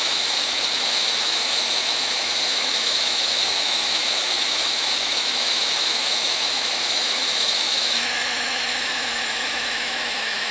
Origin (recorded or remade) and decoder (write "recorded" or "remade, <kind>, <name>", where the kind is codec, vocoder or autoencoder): remade, autoencoder, DAC-VAE